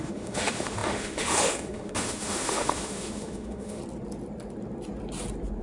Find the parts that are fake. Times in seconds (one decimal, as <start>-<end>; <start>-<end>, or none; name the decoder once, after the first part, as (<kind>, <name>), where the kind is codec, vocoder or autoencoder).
0.0-3.8 (autoencoder, DAC-VAE)